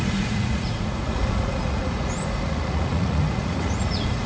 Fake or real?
fake